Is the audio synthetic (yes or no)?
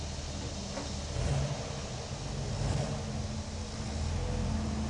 no